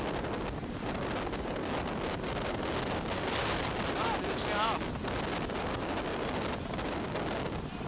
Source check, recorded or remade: recorded